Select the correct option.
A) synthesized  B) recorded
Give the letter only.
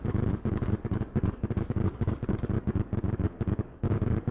A